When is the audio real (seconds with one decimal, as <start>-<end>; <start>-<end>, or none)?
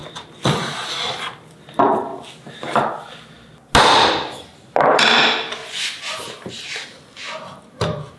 0.0-5.6; 6.2-8.2